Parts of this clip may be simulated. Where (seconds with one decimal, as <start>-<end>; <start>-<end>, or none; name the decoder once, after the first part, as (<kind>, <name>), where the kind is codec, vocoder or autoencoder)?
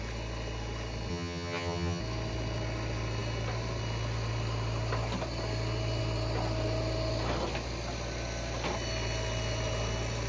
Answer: 1.1-2.0 (vocoder, HiFi-GAN)